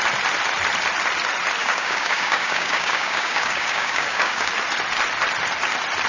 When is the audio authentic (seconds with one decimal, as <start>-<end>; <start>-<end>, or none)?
0.0-1.6; 4.5-6.1

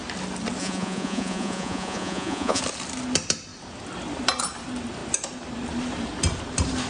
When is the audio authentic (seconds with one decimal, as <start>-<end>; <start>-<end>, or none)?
0.0-0.6; 2.6-6.9

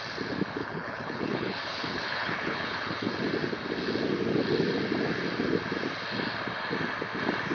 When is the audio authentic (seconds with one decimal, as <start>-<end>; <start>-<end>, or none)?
0.0-0.6; 3.1-7.5

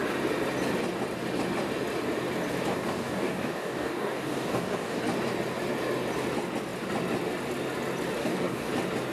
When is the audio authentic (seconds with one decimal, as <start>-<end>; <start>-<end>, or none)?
0.0-2.7; 5.0-8.2; 8.7-9.1

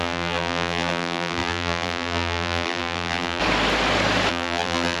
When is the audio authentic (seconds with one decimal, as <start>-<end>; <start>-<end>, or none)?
3.4-4.3